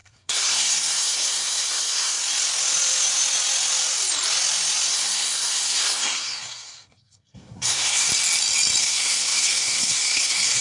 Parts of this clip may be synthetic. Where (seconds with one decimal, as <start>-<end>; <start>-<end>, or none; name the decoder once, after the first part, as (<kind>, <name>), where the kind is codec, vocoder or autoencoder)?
0.0-2.2 (codec, SNAC); 4.9-8.1; 8.8-10.6